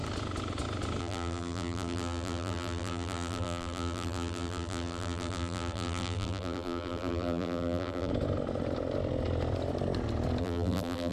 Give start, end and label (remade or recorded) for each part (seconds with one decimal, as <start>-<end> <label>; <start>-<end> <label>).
0.0-1.0 recorded; 1.0-8.1 remade; 8.1-10.4 recorded; 10.4-11.1 remade